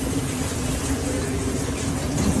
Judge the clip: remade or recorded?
recorded